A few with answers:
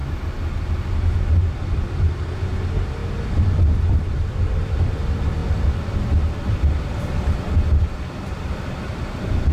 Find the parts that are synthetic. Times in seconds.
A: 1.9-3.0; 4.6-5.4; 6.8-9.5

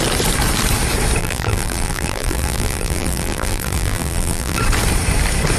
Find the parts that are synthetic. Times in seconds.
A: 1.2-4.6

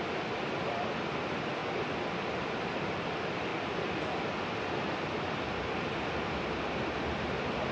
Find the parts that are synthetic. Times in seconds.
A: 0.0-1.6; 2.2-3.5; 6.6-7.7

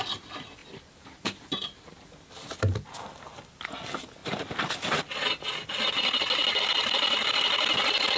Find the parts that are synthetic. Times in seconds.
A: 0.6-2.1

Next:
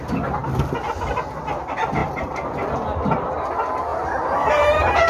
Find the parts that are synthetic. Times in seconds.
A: none